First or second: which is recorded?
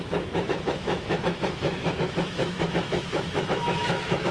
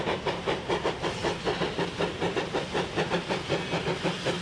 second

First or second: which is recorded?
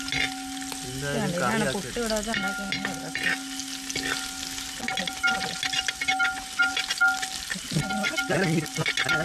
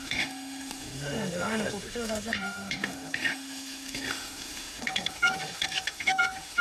first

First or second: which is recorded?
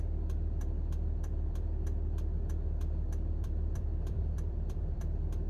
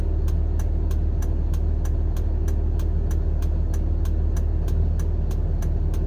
second